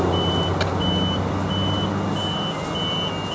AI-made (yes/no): no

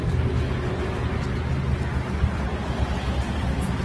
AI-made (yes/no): no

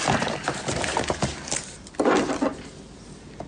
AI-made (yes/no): no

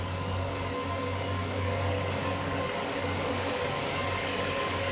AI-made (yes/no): yes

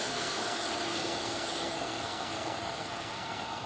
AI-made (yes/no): yes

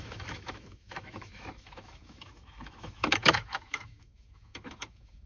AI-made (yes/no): yes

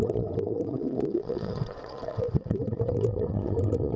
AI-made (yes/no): yes